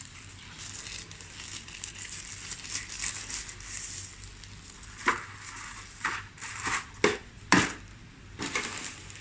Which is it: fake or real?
real